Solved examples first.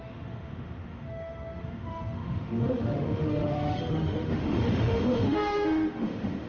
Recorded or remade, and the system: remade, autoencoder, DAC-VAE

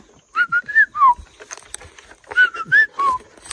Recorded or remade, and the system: recorded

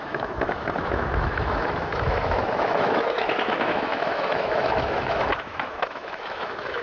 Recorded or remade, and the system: remade, autoencoder, DAC-VAE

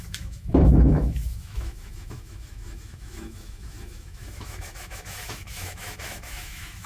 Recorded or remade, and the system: remade, autoencoder, DAC-VAE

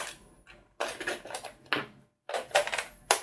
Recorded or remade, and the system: recorded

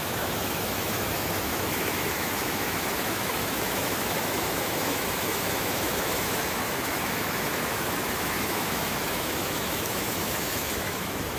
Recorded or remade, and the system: remade, autoencoder, DAC-VAE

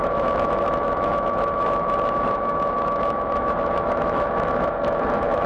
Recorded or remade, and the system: remade, autoencoder, DAC-VAE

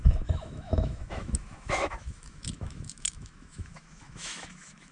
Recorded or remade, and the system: remade, autoencoder, DAC-VAE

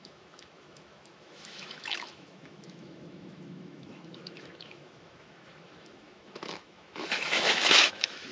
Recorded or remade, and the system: remade, autoencoder, DAC-VAE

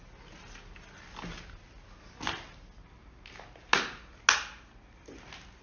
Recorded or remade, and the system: recorded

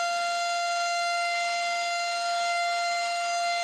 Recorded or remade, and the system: remade, autoencoder, DAC-VAE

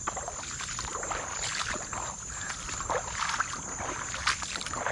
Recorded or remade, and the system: recorded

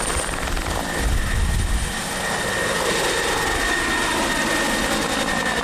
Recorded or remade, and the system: recorded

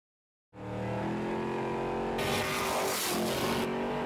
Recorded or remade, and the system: recorded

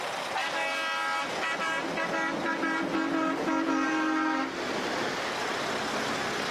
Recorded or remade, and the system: recorded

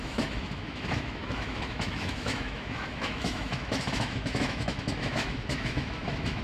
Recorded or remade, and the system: remade, autoencoder, DAC-VAE